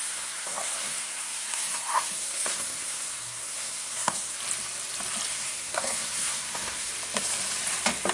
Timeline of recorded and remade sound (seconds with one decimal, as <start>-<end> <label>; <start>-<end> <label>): 0.0-4.4 remade; 4.4-5.3 recorded; 5.3-6.9 remade; 6.9-8.1 recorded

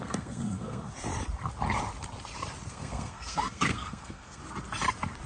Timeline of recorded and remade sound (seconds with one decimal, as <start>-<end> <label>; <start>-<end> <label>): 0.0-0.9 remade; 0.9-2.7 recorded; 2.7-4.4 remade; 4.4-5.3 recorded

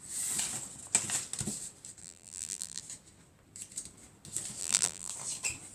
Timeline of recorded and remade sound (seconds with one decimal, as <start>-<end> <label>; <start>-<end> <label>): 0.0-2.0 recorded; 2.0-2.8 remade; 2.8-4.6 recorded; 4.6-5.1 remade; 5.1-5.7 recorded

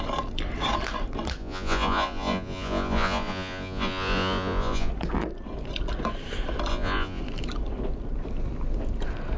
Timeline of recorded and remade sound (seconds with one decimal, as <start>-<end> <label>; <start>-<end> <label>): 0.0-1.4 recorded; 1.4-4.9 remade; 4.9-6.7 recorded; 6.7-7.2 remade; 7.2-9.4 recorded

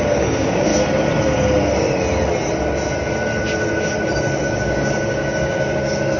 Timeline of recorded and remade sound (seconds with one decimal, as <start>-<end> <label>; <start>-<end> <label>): 0.0-0.7 remade; 0.7-4.4 recorded; 4.4-6.2 remade